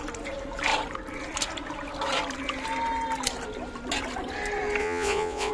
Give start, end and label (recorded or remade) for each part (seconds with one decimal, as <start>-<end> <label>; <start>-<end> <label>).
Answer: 0.0-4.8 recorded; 4.8-5.5 remade